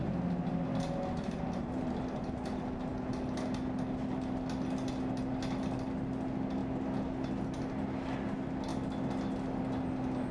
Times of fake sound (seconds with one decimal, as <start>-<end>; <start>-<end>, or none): none